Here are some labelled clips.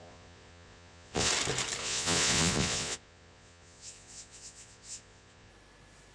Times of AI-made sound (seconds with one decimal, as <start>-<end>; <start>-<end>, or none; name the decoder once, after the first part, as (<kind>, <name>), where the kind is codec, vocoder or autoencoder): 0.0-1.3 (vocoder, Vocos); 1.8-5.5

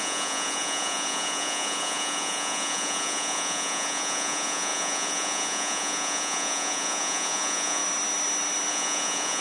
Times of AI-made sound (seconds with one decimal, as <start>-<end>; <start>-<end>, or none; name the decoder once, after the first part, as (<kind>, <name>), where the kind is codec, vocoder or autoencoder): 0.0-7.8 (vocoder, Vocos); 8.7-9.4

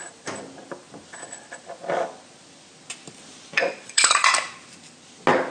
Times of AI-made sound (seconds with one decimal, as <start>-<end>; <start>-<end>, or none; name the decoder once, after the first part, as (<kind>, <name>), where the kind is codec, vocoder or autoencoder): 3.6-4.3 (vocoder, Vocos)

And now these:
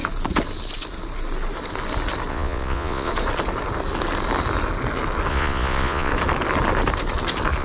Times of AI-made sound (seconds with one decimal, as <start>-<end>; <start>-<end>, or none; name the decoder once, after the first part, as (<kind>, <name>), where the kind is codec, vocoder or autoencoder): 2.3-3.1 (vocoder, Vocos); 5.3-6.1